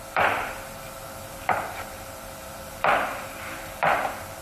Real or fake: fake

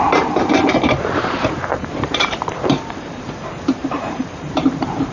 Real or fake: fake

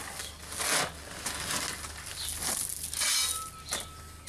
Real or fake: real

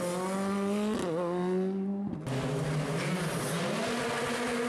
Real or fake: real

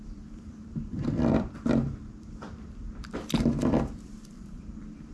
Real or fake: fake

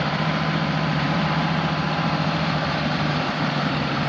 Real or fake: fake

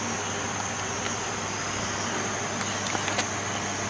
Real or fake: real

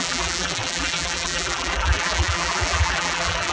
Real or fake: fake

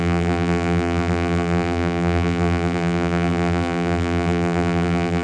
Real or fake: fake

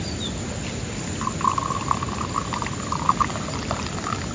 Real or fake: fake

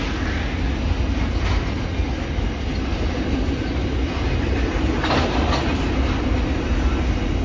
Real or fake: real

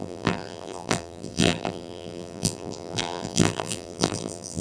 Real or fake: fake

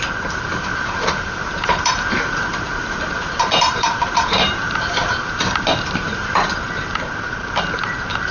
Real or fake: fake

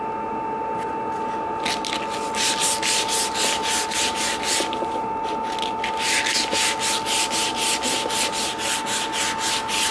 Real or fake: real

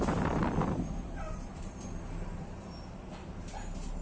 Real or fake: fake